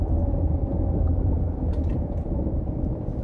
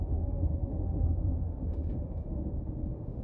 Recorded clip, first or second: first